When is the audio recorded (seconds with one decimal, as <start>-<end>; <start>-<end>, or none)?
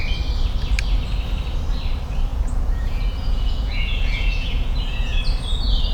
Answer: 0.0-2.3; 5.2-5.9